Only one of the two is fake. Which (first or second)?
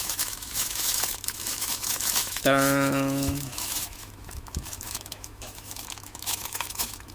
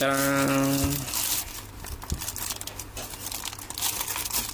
first